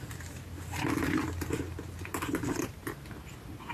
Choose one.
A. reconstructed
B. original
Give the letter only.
B